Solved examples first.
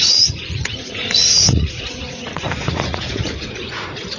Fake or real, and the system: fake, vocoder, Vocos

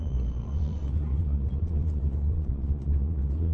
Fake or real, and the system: fake, vocoder, Vocos